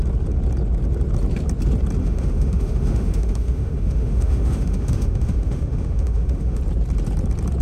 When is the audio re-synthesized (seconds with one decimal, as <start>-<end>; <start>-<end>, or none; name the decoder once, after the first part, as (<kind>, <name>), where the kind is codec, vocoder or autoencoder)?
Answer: 2.0-6.6 (autoencoder, DAC-VAE)

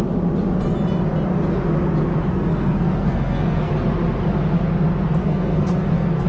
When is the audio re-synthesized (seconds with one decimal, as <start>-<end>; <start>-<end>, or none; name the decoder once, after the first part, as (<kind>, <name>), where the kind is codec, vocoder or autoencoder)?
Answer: 2.3-3.7 (codec, SNAC); 5.2-6.3

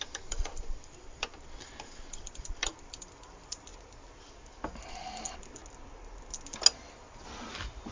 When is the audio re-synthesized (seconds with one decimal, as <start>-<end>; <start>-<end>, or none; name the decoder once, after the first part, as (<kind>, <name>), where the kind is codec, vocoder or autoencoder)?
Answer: 0.0-3.7 (vocoder, BigVGAN v2); 4.9-5.6; 6.8-7.9

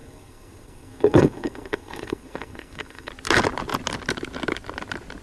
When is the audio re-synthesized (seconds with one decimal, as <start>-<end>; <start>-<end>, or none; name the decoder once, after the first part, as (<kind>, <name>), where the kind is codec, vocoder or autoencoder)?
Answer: 0.0-3.1 (codec, SNAC)

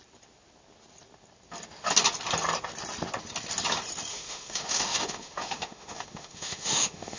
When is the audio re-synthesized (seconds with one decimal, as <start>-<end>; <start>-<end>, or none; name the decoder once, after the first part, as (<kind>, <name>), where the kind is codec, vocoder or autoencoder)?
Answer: 4.1-7.2 (autoencoder, DAC-VAE)